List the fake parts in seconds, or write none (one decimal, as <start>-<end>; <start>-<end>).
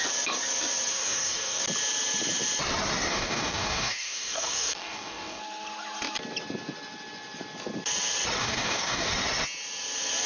0.9-1.6; 3.1-5.4; 8.4-9.1